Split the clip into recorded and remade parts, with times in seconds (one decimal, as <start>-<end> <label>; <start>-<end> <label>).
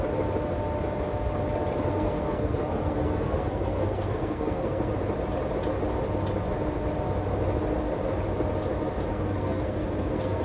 0.0-1.9 recorded; 1.9-4.9 remade; 4.9-9.1 recorded; 9.1-10.4 remade